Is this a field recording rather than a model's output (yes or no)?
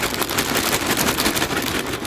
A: yes